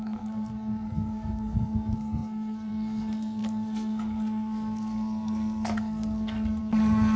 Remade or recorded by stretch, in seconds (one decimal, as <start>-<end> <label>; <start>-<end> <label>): 0.0-7.2 remade